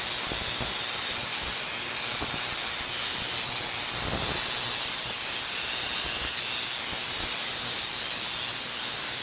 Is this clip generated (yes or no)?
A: no